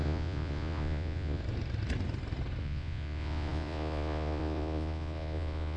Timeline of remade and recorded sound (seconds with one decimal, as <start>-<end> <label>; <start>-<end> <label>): 0.0-1.4 remade; 1.4-2.6 recorded; 2.6-5.8 remade